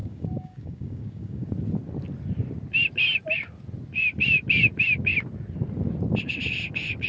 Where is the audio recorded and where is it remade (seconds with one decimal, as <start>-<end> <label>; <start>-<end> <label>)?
0.0-1.5 remade; 1.5-7.1 recorded